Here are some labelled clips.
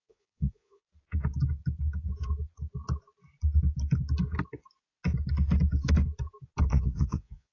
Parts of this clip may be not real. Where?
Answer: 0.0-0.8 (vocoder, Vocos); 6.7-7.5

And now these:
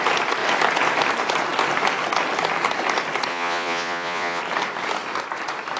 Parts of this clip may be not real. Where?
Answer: 3.3-4.4 (vocoder, Vocos)

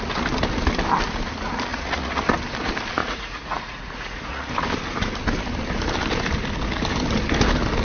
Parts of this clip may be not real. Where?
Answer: 1.7-2.2 (vocoder, Vocos); 3.0-4.5

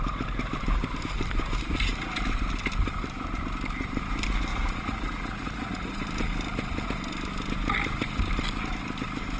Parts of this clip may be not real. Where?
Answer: 4.5-6.0 (vocoder, Vocos)